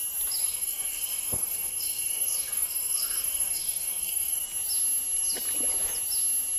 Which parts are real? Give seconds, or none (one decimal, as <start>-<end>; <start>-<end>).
0.0-0.4; 4.4-6.6